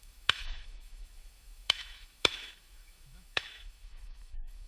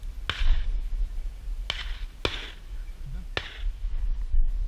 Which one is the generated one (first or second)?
first